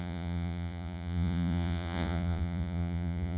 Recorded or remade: remade